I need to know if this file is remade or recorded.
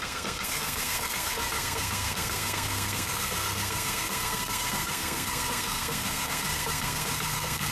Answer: remade